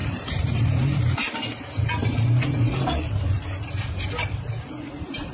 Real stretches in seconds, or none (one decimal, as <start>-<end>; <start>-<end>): 1.0-2.0